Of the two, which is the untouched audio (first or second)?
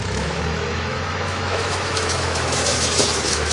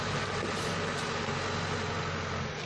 second